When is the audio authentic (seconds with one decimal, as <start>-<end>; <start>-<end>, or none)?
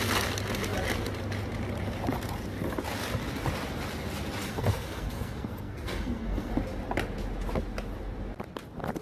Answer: 0.0-4.4; 6.5-9.0